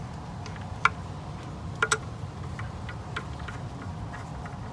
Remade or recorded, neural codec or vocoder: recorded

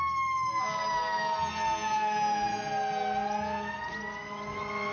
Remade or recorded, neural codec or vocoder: recorded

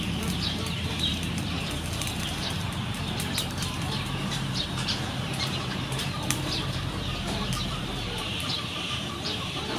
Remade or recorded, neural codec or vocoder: remade, vocoder, BigVGAN v2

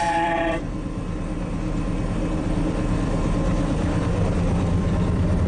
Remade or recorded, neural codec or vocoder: remade, vocoder, BigVGAN v2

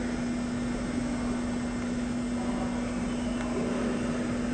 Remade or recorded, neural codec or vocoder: recorded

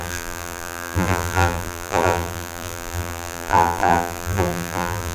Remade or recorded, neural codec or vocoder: remade, vocoder, BigVGAN v2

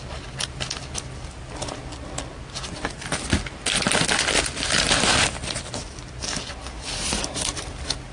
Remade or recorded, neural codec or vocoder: recorded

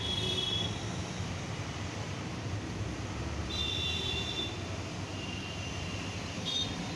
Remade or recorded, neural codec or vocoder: remade, vocoder, BigVGAN v2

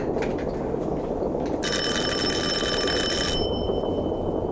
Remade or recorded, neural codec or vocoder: remade, vocoder, BigVGAN v2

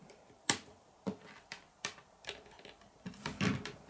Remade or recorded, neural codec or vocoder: remade, vocoder, BigVGAN v2